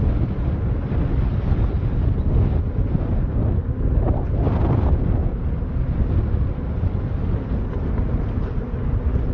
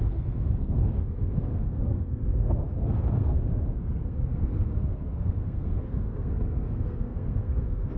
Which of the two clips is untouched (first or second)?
first